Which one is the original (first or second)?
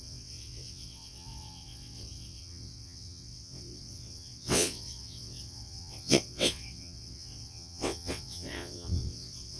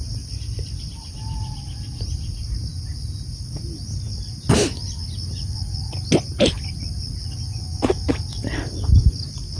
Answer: second